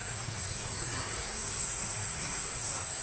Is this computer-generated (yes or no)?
yes